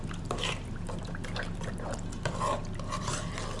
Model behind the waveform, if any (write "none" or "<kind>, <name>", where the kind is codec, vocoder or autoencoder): vocoder, BigVGAN v2